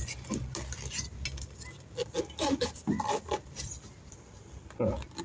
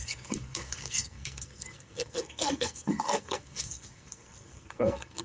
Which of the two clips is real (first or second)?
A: first